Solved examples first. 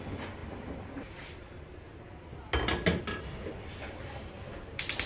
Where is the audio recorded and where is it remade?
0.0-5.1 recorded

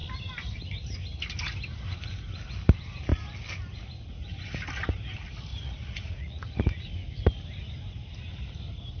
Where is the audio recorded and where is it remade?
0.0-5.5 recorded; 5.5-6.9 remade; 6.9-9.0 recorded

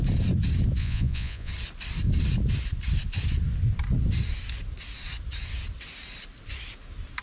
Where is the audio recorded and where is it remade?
0.0-0.8 recorded; 0.8-1.5 remade; 1.5-7.2 recorded